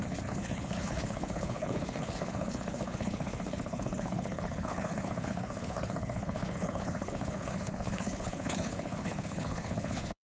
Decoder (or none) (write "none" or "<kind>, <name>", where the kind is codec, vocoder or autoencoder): codec, HILCodec